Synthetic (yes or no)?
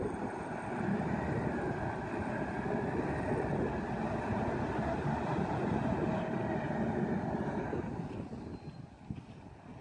no